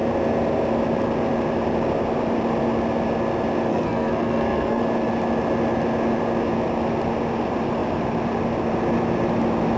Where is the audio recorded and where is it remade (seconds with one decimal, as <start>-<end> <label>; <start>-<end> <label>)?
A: 0.0-3.7 recorded; 3.7-4.8 remade; 4.8-9.8 recorded